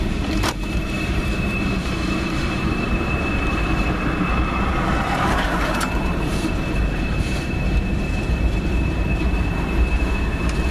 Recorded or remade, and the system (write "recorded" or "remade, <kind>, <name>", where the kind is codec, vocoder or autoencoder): remade, vocoder, BigVGAN v2